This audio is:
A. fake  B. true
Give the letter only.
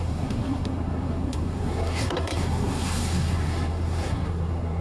A